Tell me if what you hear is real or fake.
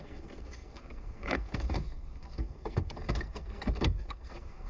fake